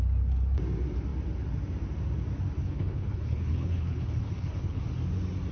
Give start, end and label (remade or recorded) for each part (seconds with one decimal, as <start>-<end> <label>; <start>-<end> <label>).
0.0-2.6 recorded; 2.6-4.8 remade; 4.8-5.5 recorded